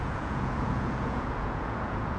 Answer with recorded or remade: remade